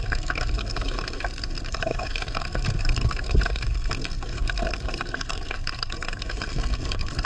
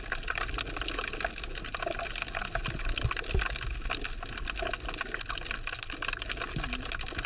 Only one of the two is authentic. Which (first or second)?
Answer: second